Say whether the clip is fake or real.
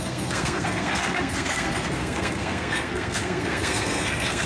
fake